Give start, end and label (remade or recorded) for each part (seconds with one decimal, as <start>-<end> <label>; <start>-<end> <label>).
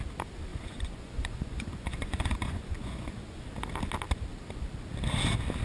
0.0-0.5 recorded; 0.5-3.5 remade; 3.5-5.6 recorded